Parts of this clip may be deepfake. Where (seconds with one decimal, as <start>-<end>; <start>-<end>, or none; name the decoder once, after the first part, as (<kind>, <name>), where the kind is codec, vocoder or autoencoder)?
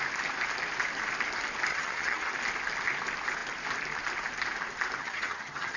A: 1.7-2.3 (vocoder, HiFi-GAN); 5.0-5.8